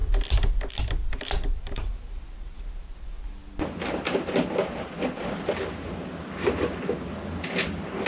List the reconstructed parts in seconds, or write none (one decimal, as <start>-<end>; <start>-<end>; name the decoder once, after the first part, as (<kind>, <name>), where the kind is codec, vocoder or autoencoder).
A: 1.0-1.9 (vocoder, BigVGAN v2)